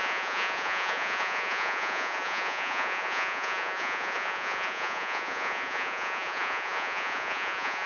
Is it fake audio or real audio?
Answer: fake